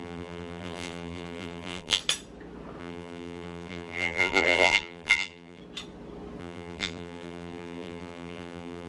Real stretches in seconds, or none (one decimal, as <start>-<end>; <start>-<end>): 2.0-2.8; 5.6-6.4

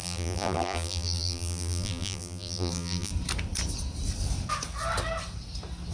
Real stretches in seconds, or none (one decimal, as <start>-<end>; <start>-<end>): 3.1-5.9

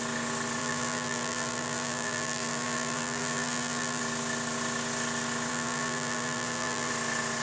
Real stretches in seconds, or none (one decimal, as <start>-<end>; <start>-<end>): 0.0-0.6; 4.0-5.5; 6.9-7.4

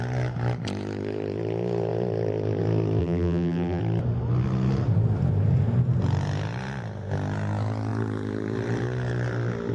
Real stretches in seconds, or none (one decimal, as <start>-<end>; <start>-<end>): 0.0-3.0; 3.8-9.7

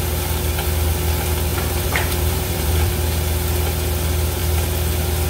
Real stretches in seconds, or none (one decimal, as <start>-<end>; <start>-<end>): 0.0-1.5; 2.9-5.3

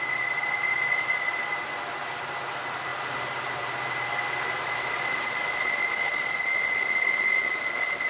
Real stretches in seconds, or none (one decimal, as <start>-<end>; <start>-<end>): 0.0-8.1

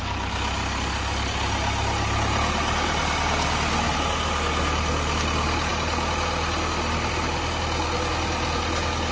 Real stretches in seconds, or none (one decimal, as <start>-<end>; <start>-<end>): 0.0-9.1

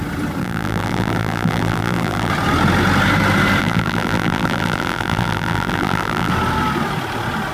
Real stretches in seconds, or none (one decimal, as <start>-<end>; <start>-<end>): 0.0-0.4; 2.3-3.6; 6.3-7.5